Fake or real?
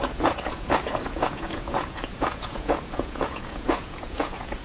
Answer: fake